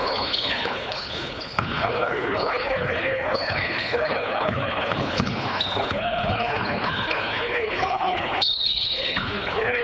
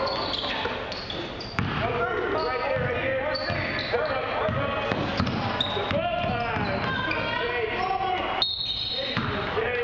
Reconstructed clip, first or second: first